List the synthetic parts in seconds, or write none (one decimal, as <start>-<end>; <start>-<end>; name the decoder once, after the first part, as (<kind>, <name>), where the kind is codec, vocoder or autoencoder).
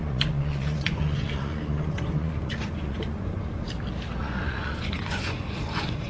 0.0-3.7 (vocoder, Vocos); 4.2-6.1